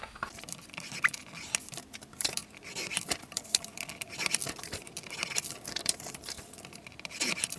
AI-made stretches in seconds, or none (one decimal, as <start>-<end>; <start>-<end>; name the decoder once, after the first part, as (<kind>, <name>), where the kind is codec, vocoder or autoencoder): 0.0-1.2 (vocoder, BigVGAN v2); 1.8-7.6